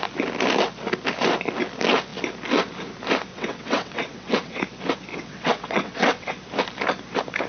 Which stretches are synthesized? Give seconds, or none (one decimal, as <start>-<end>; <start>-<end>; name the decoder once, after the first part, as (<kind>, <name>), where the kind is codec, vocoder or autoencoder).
3.3-4.6 (vocoder, WaveNeXt); 5.1-6.3